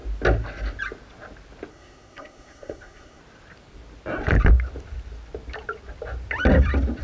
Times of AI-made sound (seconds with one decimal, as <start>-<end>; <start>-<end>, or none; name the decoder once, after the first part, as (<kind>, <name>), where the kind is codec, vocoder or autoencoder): 1.7-3.2 (codec, SNAC)